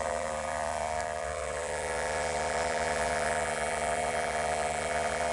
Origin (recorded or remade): remade